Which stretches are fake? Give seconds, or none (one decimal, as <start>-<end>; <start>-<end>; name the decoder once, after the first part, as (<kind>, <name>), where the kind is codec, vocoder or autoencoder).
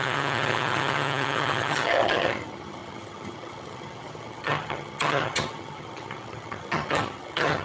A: 0.0-7.6 (vocoder, HiFi-GAN)